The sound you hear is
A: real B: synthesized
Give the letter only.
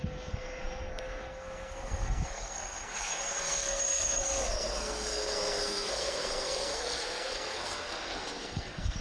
B